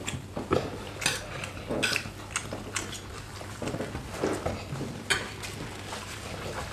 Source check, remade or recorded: recorded